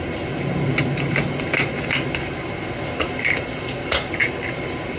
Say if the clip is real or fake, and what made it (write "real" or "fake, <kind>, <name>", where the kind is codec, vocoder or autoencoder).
real